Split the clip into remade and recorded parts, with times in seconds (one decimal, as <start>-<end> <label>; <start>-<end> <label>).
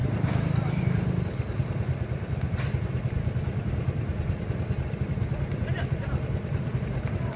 0.0-7.4 recorded